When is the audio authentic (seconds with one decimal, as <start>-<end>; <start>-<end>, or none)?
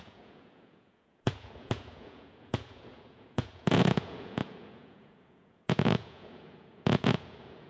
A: none